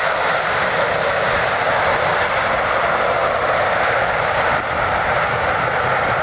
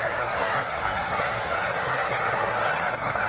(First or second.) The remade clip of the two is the second